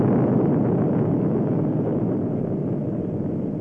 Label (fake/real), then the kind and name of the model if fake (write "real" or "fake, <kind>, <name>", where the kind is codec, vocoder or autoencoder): real